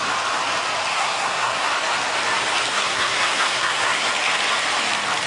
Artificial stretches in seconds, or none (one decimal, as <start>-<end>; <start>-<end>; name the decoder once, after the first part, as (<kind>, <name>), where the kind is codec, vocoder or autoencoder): 0.9-1.7 (codec, SNAC); 2.7-4.1